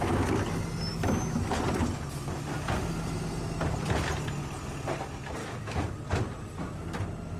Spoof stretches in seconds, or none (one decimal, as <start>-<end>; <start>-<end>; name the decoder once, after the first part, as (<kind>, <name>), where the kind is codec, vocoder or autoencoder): 0.9-1.5 (autoencoder, DAC-VAE); 5.4-5.9